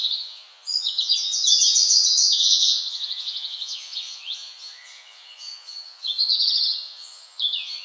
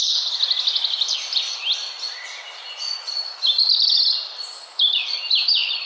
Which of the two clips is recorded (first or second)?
second